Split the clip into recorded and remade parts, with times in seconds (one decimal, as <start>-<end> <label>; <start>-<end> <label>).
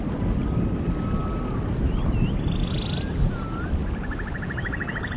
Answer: 0.0-3.8 recorded; 3.8-5.2 remade